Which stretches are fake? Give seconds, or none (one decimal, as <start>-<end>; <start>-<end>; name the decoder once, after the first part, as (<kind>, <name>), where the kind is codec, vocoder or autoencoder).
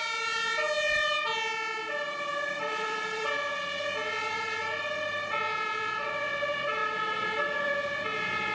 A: none